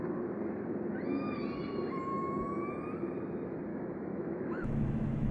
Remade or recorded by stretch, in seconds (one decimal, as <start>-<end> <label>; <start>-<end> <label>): 0.0-2.1 recorded; 2.1-2.7 remade; 2.7-3.7 recorded; 3.7-5.3 remade